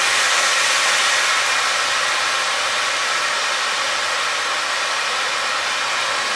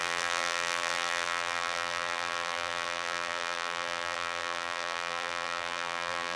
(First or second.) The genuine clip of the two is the first